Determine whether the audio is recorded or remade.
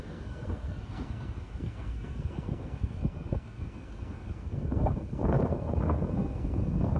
remade